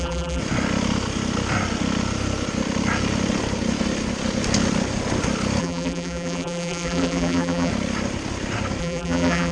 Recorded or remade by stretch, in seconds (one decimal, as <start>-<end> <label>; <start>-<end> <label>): 0.0-0.4 remade; 0.4-5.6 recorded; 5.6-7.7 remade; 7.7-8.8 recorded; 8.8-9.5 remade